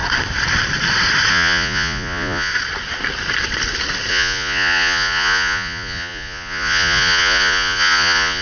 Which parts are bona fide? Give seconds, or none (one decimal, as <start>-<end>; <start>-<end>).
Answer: 0.0-1.3; 2.5-4.1